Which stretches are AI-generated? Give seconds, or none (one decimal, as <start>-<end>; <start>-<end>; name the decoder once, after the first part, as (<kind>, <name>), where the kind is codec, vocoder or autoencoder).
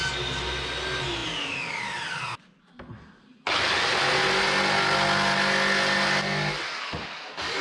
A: none